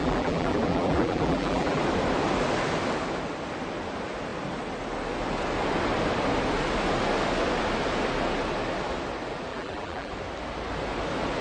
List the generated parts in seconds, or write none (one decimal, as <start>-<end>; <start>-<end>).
0.0-1.8; 9.5-10.1

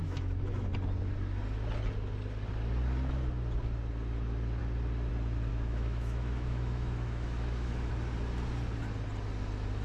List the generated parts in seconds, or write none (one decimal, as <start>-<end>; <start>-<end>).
0.0-0.7; 5.5-7.9

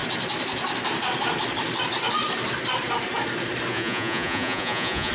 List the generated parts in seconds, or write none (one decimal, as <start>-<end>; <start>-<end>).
3.7-5.1

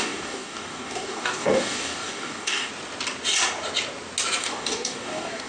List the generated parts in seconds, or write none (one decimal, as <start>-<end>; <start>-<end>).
0.0-2.7; 4.4-5.5

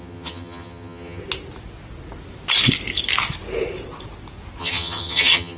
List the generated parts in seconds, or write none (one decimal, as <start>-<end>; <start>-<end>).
0.0-1.2; 4.6-5.6